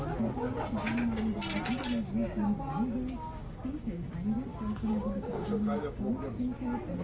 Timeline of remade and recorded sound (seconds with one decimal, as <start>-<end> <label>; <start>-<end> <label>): 0.0-3.4 recorded; 3.4-4.1 remade; 4.1-4.5 recorded; 4.5-6.1 remade; 6.1-7.0 recorded